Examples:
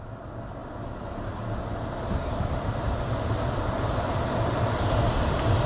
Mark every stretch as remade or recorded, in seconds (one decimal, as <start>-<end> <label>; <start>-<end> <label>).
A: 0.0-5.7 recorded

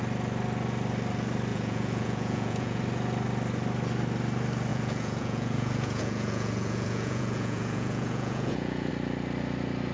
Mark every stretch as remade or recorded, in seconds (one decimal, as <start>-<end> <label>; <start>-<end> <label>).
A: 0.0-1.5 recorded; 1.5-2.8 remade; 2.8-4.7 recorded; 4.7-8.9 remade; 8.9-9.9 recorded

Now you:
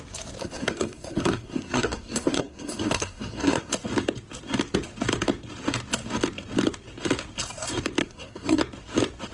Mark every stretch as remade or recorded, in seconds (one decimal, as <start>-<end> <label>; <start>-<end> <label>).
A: 0.0-0.4 recorded; 0.4-3.7 remade; 3.7-8.0 recorded; 8.0-8.6 remade; 8.6-9.3 recorded

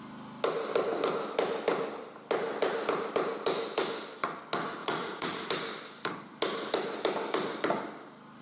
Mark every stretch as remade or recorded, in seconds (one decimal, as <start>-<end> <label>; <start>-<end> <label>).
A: 0.0-4.8 recorded; 4.8-5.5 remade; 5.5-8.4 recorded

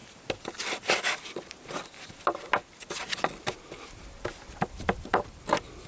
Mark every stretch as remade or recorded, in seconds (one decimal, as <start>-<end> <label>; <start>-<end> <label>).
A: 0.0-5.9 recorded

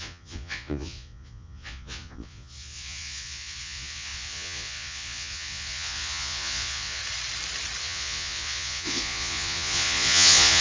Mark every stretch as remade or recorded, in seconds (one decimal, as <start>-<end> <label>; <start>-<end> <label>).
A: 0.0-7.0 remade; 7.0-7.8 recorded; 7.8-10.6 remade